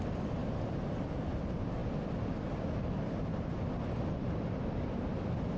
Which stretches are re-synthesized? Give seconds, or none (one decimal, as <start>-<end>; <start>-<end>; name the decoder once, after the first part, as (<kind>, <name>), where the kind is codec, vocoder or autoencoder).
none